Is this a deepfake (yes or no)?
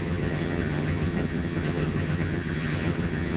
yes